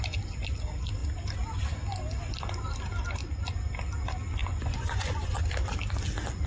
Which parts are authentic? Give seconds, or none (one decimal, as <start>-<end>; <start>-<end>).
0.0-4.4; 5.4-6.5